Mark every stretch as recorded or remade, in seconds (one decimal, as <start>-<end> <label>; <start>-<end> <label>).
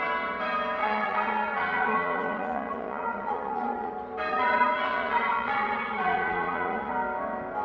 0.0-0.8 recorded; 0.8-3.9 remade; 3.9-4.3 recorded; 4.3-6.9 remade; 6.9-7.6 recorded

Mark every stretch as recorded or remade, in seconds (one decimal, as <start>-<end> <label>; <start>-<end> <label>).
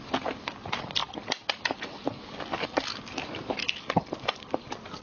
0.0-5.0 recorded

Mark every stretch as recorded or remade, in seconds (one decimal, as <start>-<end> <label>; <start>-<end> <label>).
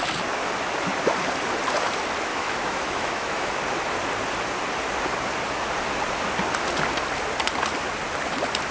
0.0-2.3 recorded; 2.3-3.5 remade; 3.5-8.7 recorded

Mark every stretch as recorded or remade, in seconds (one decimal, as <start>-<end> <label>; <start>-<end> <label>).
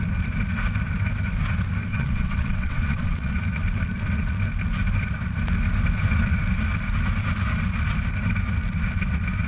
0.0-1.9 recorded; 1.9-3.3 remade; 3.3-9.5 recorded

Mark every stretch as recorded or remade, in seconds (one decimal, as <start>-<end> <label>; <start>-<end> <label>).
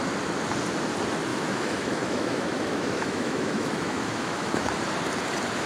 0.0-1.3 recorded; 1.3-4.7 remade; 4.7-5.7 recorded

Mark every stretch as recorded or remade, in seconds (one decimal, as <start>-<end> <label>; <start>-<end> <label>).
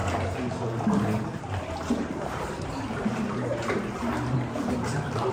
0.0-1.4 recorded; 1.4-5.3 remade